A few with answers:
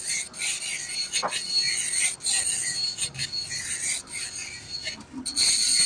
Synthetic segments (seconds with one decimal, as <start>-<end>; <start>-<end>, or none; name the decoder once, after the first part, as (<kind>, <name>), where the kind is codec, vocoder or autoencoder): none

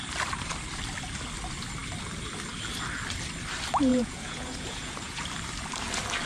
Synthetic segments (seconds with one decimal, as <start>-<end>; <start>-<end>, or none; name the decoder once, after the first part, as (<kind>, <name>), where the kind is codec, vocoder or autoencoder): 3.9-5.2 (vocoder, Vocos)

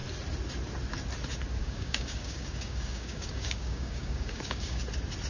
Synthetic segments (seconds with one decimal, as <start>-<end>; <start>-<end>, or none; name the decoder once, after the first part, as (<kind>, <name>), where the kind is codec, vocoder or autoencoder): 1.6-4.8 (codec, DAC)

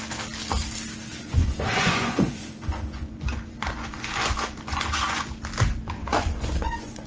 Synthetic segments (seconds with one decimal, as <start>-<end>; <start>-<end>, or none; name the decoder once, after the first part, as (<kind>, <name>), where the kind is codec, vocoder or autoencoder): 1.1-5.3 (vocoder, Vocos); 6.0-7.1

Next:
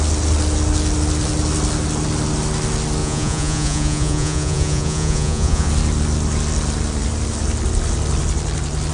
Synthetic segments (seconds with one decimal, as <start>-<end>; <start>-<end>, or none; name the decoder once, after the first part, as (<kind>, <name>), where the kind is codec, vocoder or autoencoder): 3.0-5.7 (vocoder, Vocos)

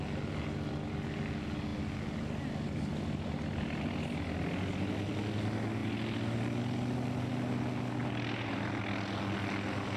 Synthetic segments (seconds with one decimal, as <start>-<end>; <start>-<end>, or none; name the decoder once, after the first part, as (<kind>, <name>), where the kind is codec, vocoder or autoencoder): 8.0-8.8 (vocoder, BigVGAN v2)

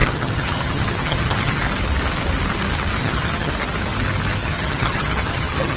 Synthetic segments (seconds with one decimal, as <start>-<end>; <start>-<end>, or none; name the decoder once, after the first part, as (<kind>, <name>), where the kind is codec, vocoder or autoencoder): 0.0-1.6 (vocoder, HiFi-GAN); 3.0-3.5; 4.4-5.8

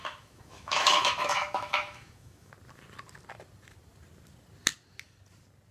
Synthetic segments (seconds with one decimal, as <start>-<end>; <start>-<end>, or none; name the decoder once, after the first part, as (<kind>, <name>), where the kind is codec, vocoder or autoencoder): 0.0-2.5 (autoencoder, DAC-VAE)